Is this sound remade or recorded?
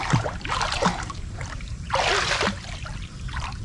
recorded